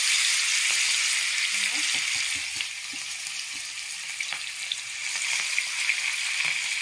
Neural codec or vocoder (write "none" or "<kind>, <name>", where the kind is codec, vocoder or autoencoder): none